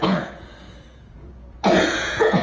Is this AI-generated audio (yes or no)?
yes